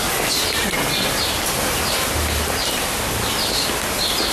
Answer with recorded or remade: recorded